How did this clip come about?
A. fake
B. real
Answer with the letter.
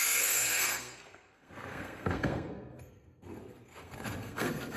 A